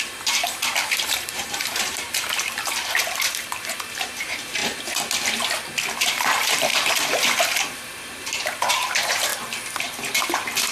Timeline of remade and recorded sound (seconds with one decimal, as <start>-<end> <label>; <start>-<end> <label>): 0.0-4.6 remade; 4.6-5.9 recorded; 5.9-9.3 remade; 9.3-10.2 recorded; 10.2-10.7 remade